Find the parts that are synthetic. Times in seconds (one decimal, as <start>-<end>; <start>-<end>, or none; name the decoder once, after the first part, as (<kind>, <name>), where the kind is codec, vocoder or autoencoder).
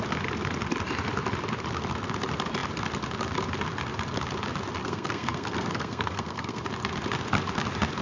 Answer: 4.8-6.6 (codec, SNAC)